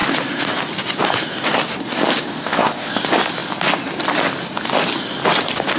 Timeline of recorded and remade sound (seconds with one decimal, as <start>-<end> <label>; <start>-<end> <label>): 0.0-2.2 recorded; 2.2-3.0 remade; 3.0-5.8 recorded